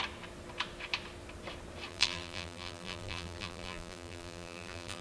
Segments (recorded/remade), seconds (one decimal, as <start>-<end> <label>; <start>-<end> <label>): 0.0-1.9 recorded; 1.9-5.0 remade